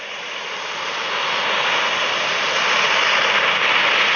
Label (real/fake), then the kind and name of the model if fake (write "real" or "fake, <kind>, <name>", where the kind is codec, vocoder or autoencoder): real